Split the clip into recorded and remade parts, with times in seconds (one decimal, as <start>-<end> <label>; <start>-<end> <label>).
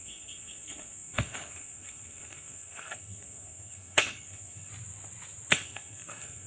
0.0-4.7 remade; 4.7-5.5 recorded; 5.5-6.5 remade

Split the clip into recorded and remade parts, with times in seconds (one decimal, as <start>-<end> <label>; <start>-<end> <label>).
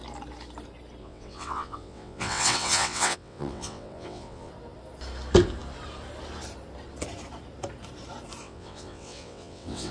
0.0-1.0 recorded; 1.0-4.5 remade; 4.5-8.4 recorded; 8.4-9.9 remade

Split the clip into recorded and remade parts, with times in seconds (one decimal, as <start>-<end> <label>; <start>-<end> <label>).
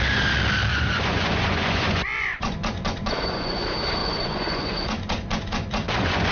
0.0-0.7 recorded; 0.7-3.6 remade; 3.6-4.0 recorded; 4.0-6.3 remade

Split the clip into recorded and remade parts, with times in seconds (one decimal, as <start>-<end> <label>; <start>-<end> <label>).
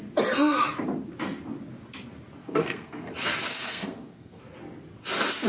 0.0-2.4 recorded; 2.4-3.1 remade; 3.1-3.5 recorded; 3.5-4.4 remade; 4.4-5.5 recorded